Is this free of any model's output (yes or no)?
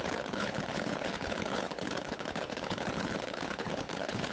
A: no